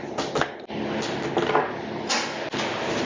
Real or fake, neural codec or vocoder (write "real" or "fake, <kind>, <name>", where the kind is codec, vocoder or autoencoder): real